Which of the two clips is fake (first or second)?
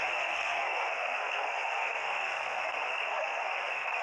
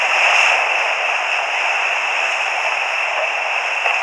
first